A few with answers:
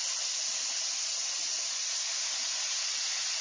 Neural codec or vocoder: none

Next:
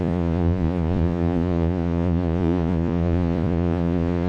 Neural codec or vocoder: vocoder, Vocos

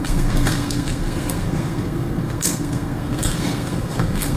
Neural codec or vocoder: codec, SNAC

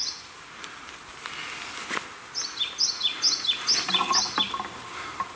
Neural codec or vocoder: none